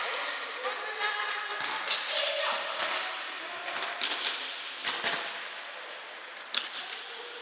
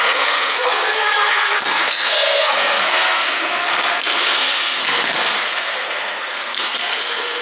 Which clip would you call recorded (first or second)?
first